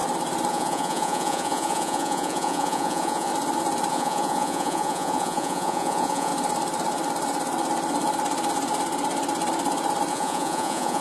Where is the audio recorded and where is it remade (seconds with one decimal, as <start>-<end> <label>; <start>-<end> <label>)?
0.0-0.5 recorded; 0.5-3.3 remade; 3.3-3.9 recorded; 3.9-6.3 remade; 6.3-10.1 recorded; 10.1-11.0 remade